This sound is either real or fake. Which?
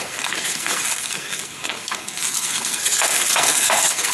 fake